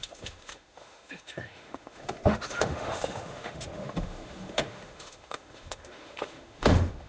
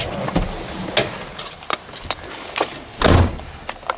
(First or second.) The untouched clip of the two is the second